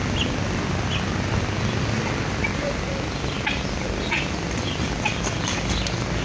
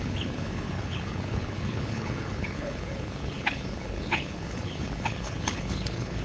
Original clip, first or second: first